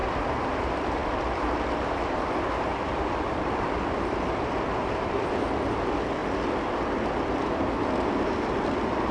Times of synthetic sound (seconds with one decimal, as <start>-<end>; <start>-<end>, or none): 0.0-2.3; 2.7-5.3